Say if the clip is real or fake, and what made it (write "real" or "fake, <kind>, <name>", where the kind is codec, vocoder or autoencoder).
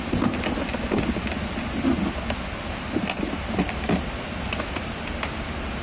real